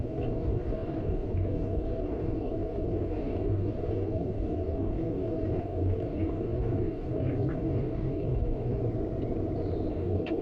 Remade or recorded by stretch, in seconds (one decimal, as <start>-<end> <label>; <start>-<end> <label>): 0.0-8.8 remade; 8.8-9.9 recorded; 9.9-10.4 remade